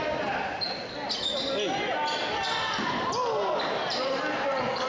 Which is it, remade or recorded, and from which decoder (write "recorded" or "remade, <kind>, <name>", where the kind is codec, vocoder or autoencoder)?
recorded